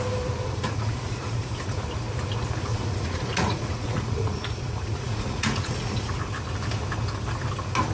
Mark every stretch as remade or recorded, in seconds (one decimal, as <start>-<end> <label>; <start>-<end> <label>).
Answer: 0.0-0.4 recorded; 0.4-1.8 remade; 1.8-2.7 recorded; 2.7-6.2 remade; 6.2-7.9 recorded